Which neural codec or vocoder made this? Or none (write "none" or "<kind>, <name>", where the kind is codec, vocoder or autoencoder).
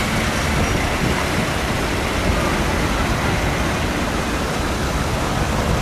none